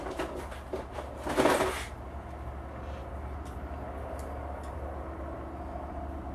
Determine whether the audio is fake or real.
real